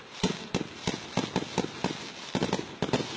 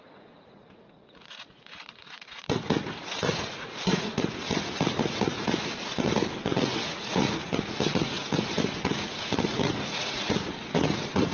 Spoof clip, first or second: second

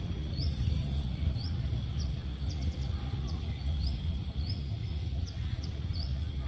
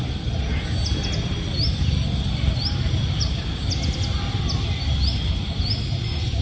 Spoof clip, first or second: first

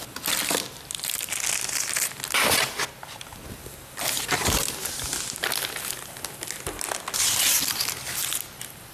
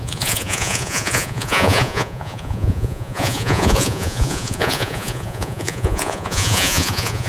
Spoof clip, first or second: second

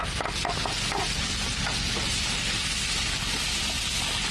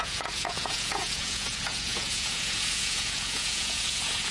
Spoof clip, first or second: second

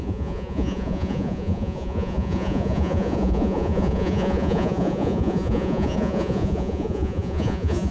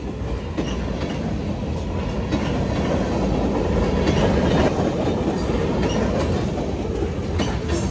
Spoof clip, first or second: first